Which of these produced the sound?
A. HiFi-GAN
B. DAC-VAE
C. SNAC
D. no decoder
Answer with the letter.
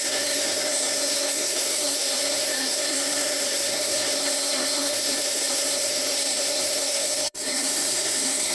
C